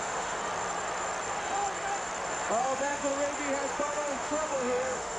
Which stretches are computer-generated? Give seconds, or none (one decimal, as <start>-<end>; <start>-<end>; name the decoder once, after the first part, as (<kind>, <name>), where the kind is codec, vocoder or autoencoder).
0.0-0.4 (autoencoder, DAC-VAE); 2.6-3.1; 3.7-5.2